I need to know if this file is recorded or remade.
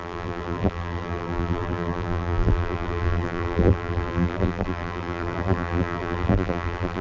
remade